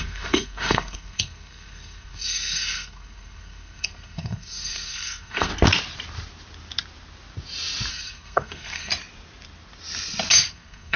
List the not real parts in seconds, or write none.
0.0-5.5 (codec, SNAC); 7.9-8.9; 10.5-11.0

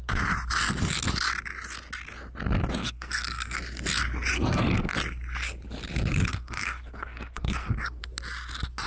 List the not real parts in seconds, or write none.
2.8-3.6 (codec, SNAC); 4.3-4.9; 6.3-8.0

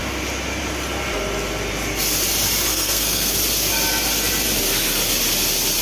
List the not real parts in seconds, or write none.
2.7-3.3 (codec, SNAC)

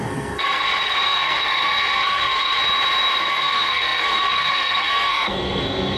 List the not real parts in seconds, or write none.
0.0-2.6 (codec, SNAC); 3.2-6.0

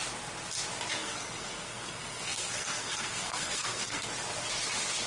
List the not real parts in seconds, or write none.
1.0-4.1 (codec, SNAC)

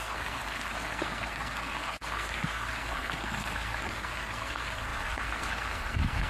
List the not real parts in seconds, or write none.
0.0-6.3 (codec, SNAC)